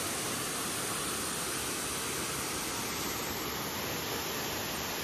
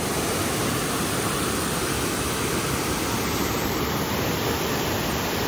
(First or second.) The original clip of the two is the first